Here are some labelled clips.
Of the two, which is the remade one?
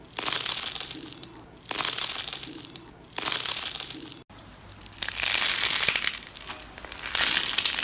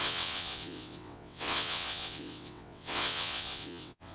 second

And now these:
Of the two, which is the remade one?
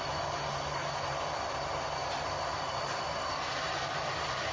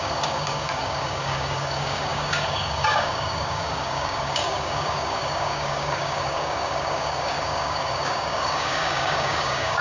second